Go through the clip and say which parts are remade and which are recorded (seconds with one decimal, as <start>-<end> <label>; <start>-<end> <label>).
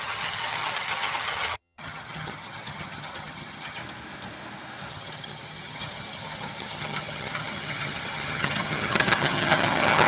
0.0-3.8 remade; 3.8-4.9 recorded; 4.9-10.1 remade